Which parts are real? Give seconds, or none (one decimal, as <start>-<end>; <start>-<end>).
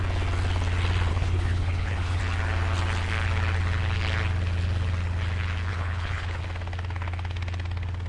0.0-1.1; 2.2-5.7; 6.4-8.1